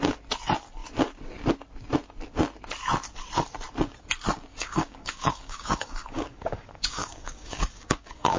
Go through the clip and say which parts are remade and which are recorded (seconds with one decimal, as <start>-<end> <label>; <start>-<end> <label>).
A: 0.0-4.5 recorded; 4.5-8.4 remade